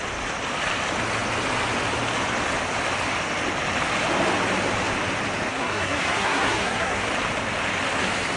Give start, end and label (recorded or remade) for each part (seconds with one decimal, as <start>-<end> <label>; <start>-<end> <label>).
0.0-5.5 recorded; 5.5-7.1 remade; 7.1-8.4 recorded